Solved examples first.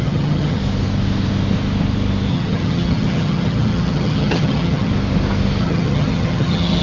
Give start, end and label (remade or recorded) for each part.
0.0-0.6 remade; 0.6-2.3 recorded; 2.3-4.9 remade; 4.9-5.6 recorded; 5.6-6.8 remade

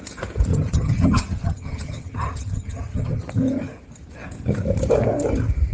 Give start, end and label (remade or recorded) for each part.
0.0-0.5 recorded; 0.5-3.2 remade; 3.2-5.7 recorded

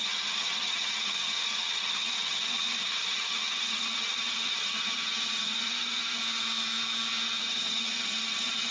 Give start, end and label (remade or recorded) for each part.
0.0-6.2 remade; 6.2-7.4 recorded; 7.4-8.7 remade

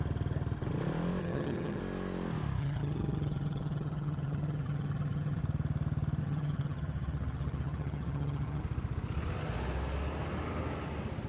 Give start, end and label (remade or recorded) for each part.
0.0-1.2 recorded; 1.2-1.8 remade; 1.8-2.6 recorded; 2.6-5.4 remade; 5.4-6.2 recorded; 6.2-8.6 remade; 8.6-11.3 recorded

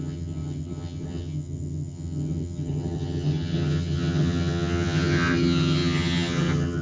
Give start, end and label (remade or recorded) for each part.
0.0-6.8 remade

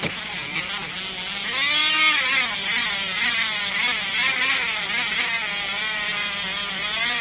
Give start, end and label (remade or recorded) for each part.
0.0-7.2 recorded